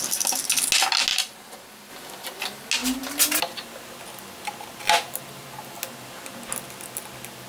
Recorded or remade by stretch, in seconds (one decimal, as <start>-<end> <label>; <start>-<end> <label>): 0.0-1.1 recorded; 1.1-1.9 remade; 1.9-7.5 recorded